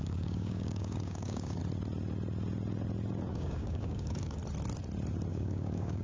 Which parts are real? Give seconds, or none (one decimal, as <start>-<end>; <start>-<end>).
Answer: 1.6-3.3; 4.4-5.3